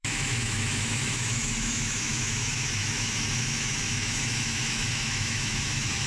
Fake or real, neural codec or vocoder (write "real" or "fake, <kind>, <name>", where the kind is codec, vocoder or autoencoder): fake, autoencoder, DAC-VAE